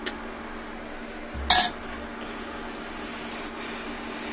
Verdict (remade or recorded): recorded